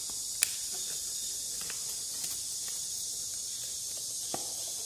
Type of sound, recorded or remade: recorded